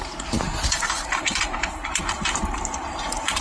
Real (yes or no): no